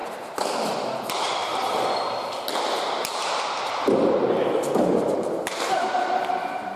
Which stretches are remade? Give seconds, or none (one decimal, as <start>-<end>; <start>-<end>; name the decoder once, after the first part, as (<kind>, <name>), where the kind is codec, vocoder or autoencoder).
1.1-1.6 (vocoder, BigVGAN v2); 3.7-6.8